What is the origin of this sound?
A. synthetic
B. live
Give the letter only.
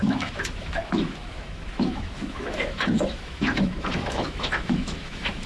A